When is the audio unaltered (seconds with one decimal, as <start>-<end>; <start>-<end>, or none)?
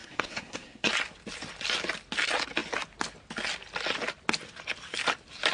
0.9-5.5